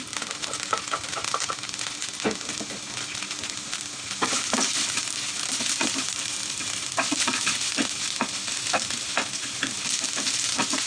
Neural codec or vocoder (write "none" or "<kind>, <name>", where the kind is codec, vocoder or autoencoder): none